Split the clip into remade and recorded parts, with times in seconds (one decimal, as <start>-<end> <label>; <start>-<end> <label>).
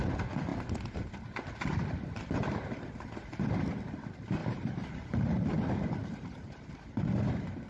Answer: 0.0-4.4 recorded; 4.4-5.5 remade; 5.5-6.0 recorded; 6.0-7.1 remade; 7.1-7.7 recorded